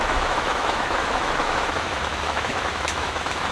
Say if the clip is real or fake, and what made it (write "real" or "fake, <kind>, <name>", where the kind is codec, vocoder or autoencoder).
fake, autoencoder, DAC-VAE